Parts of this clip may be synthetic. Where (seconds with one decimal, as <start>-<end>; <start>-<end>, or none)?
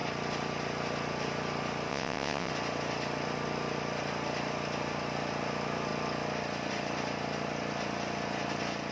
1.9-2.5